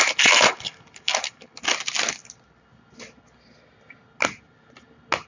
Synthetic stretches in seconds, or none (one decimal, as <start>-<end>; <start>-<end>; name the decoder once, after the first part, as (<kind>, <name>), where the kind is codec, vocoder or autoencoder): none